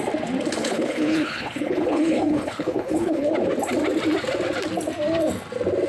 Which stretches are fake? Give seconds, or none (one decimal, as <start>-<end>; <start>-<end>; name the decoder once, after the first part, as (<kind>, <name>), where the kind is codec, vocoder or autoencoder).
0.6-3.3 (codec, HILCodec)